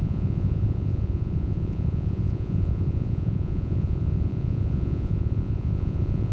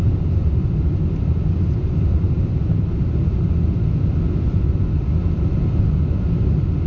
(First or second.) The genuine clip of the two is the second